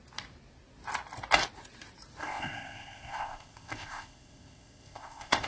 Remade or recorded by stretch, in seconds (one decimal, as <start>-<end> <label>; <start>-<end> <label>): 0.0-2.2 recorded; 2.2-5.5 remade